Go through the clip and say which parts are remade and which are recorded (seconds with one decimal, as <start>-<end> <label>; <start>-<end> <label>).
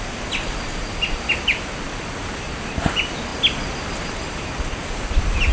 0.0-5.5 recorded